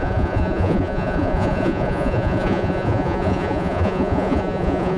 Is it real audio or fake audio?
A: fake